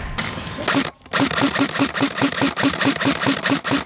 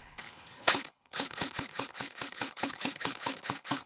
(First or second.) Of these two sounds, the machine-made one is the second